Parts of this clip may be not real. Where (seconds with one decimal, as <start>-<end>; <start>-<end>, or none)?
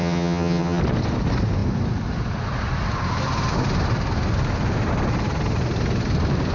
0.0-0.8